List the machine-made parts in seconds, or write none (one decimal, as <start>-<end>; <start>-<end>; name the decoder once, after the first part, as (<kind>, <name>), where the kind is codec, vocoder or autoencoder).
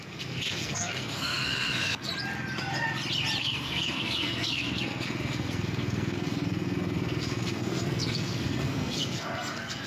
0.0-2.1 (codec, SNAC); 3.4-9.9